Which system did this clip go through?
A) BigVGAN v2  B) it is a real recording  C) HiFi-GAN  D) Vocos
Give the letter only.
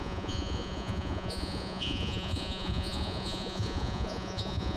D